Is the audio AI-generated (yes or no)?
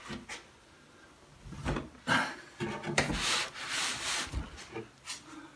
no